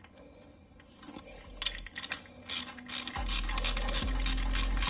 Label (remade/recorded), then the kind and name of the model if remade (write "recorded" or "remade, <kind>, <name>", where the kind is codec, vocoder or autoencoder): recorded